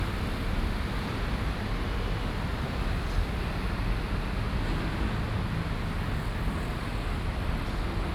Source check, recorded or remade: recorded